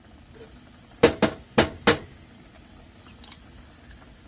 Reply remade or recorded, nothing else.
recorded